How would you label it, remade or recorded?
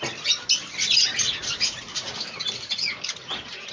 recorded